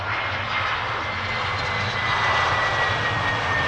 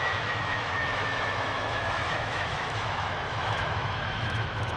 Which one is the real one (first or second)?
first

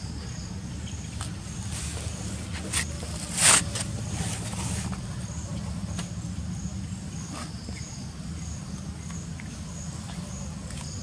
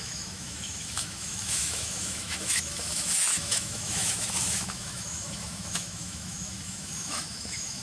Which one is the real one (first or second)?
first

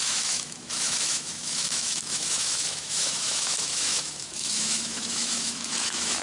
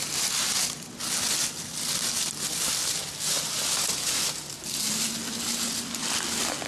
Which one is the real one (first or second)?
second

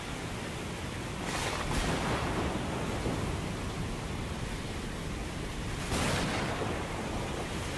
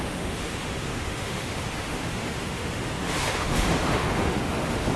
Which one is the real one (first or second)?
first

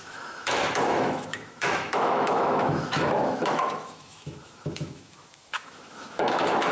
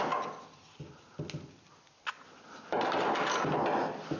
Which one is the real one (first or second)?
second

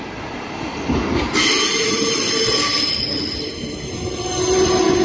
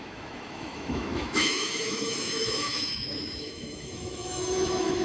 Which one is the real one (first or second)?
first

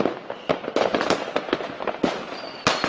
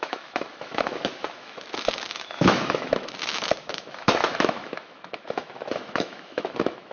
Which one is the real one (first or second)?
first